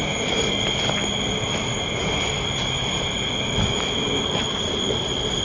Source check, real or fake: real